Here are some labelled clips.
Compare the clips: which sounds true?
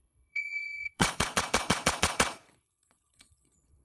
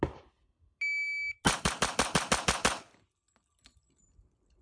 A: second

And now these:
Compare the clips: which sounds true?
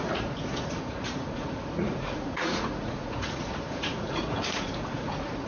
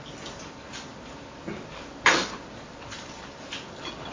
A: second